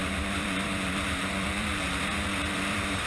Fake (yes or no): yes